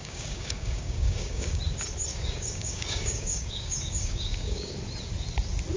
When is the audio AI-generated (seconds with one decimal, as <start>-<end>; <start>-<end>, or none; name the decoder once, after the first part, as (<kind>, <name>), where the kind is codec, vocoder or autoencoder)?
0.0-1.6 (codec, DAC); 2.1-4.7